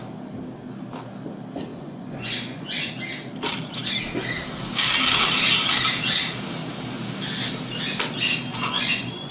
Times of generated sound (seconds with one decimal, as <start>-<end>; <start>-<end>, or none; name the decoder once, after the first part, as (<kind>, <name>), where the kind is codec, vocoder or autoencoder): 1.7-2.9 (vocoder, Vocos); 8.5-9.3